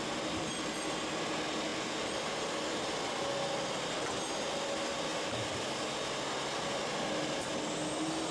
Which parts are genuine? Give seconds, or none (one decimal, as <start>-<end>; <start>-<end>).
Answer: 0.0-8.3